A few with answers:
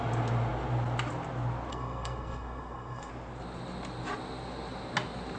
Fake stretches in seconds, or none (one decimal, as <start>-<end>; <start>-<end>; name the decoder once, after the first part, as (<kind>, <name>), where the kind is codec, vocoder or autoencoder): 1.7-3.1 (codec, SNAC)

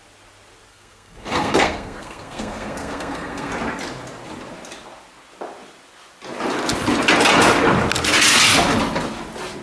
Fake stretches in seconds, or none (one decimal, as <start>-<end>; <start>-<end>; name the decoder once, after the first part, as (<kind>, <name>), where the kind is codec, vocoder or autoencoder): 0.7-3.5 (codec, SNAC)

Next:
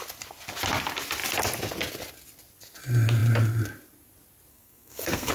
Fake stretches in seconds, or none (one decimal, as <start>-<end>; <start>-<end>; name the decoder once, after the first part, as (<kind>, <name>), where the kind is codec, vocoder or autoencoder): 4.5-5.3 (codec, SNAC)